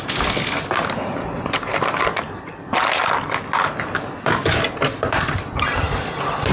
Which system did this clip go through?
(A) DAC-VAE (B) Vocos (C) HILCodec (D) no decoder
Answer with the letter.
D